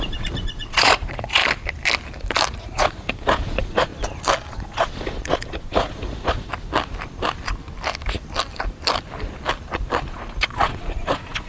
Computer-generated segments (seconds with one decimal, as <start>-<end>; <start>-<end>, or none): 0.0-1.4; 2.6-3.9; 4.5-6.5; 10.1-11.5

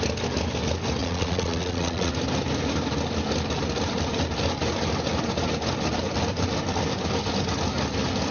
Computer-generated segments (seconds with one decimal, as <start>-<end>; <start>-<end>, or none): 1.0-2.1

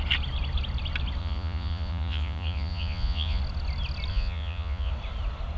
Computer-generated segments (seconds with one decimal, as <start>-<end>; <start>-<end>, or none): 1.2-3.4; 4.1-4.9

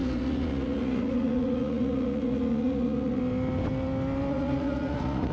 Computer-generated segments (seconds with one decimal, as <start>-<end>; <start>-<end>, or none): 0.0-3.2; 4.3-5.3

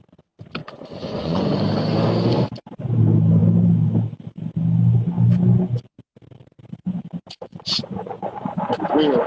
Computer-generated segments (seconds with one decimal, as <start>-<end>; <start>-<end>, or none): 0.6-1.6; 7.5-8.7